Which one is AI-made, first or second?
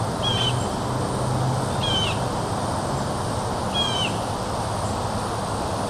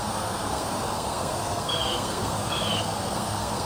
second